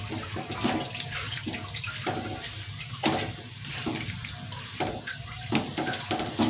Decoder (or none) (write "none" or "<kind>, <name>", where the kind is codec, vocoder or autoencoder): none